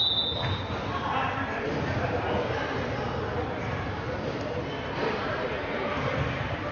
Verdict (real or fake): real